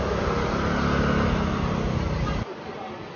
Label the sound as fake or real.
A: real